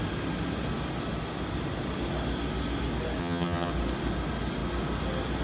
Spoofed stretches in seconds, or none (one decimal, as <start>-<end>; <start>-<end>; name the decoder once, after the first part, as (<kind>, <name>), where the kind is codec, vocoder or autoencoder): 3.2-3.7 (vocoder, HiFi-GAN)

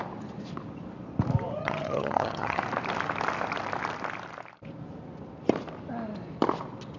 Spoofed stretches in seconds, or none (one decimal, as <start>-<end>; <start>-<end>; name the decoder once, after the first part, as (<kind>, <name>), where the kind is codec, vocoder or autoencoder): 1.6-2.6 (vocoder, HiFi-GAN)

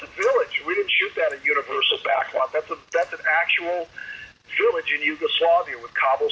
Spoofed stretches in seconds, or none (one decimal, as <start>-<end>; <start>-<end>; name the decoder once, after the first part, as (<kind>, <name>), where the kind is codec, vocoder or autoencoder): 1.7-2.4 (vocoder, HiFi-GAN)

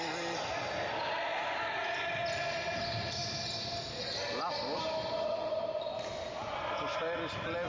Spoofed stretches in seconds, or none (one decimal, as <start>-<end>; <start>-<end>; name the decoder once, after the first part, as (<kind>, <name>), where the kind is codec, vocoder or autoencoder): none